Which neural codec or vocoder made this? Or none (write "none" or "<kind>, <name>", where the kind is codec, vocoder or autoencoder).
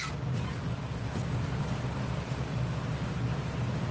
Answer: none